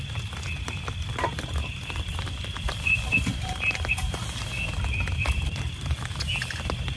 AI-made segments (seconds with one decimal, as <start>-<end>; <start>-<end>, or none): 2.4-4.0